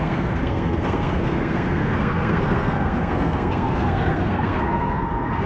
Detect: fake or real fake